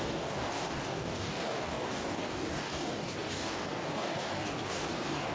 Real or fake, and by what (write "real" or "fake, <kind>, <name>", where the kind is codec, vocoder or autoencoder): fake, codec, DAC